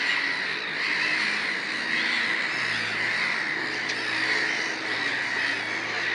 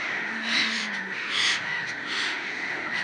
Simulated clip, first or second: second